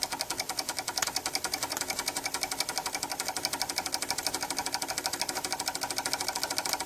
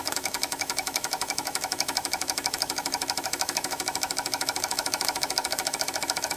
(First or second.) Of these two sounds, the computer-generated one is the second